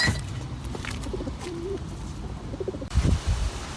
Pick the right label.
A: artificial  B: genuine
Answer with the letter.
A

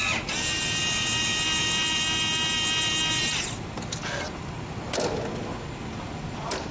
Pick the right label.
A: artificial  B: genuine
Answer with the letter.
B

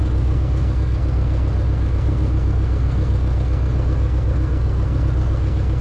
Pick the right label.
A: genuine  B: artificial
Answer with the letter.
B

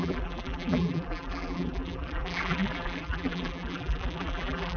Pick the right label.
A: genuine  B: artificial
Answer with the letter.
B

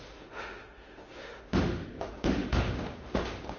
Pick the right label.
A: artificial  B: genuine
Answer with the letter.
A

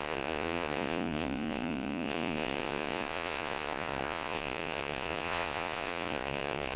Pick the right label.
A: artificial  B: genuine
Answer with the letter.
A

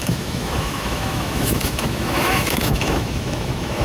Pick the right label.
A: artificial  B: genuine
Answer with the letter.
A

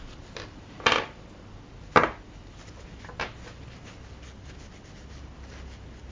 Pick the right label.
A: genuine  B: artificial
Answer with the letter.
A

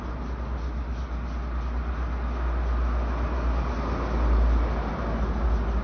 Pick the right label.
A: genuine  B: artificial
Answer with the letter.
A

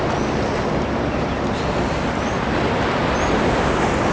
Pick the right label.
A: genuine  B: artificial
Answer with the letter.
A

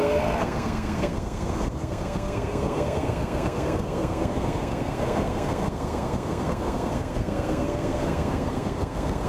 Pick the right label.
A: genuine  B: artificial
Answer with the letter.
B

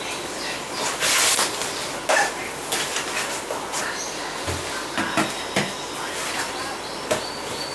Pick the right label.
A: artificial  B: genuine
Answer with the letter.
B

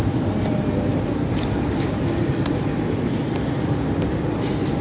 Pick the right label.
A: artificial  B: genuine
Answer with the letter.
B